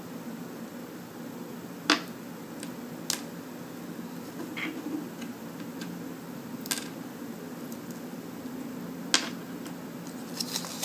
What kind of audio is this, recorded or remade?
recorded